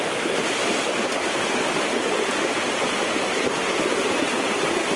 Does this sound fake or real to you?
real